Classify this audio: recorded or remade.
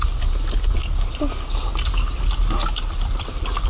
recorded